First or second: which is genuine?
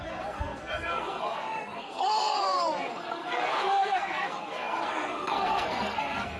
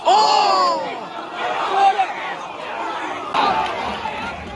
second